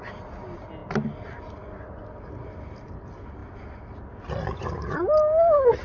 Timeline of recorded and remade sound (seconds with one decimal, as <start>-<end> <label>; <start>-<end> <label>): 0.0-5.8 recorded